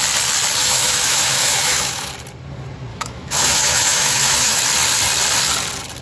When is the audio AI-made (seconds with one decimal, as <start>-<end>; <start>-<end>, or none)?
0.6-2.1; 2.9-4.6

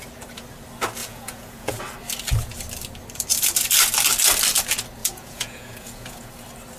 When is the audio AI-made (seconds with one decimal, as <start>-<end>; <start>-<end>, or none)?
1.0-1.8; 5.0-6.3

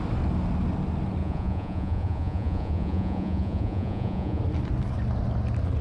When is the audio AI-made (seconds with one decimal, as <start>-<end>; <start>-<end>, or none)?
1.2-4.4

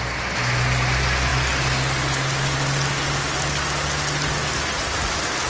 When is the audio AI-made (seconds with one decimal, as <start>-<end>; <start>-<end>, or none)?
none